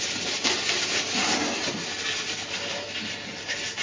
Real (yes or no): yes